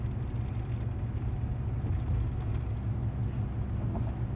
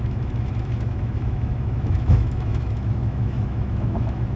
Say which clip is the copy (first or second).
second